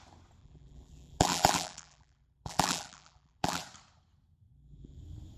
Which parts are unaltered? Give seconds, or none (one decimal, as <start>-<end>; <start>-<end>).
0.0-0.4; 3.6-4.5; 5.0-5.4